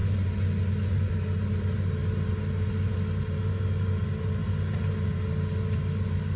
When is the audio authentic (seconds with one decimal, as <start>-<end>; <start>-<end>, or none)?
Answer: 0.0-6.4